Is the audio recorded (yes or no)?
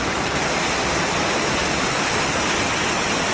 yes